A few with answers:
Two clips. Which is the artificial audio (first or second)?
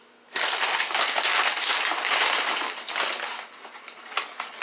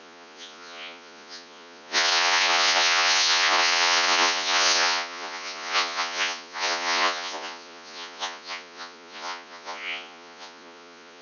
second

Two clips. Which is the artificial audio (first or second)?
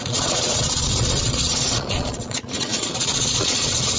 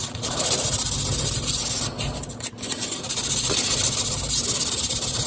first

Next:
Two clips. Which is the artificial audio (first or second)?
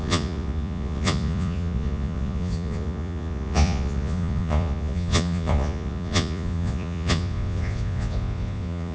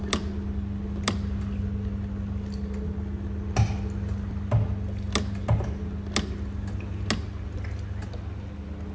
first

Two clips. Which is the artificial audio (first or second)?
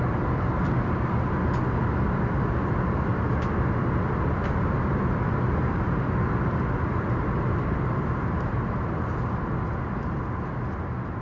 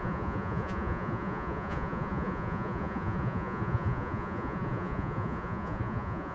second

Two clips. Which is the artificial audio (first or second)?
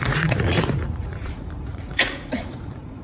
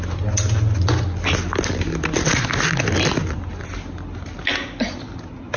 first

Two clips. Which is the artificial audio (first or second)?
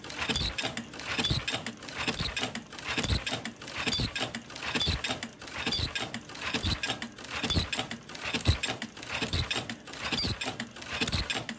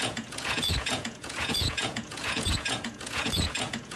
second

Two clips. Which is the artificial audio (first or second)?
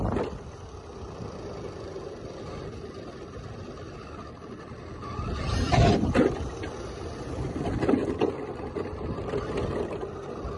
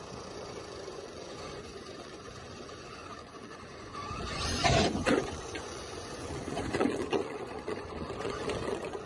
second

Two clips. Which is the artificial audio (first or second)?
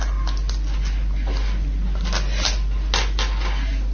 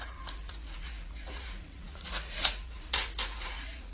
second